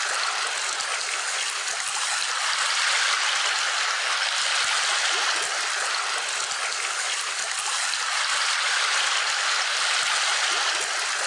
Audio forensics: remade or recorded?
recorded